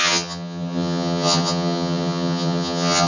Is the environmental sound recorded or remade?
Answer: remade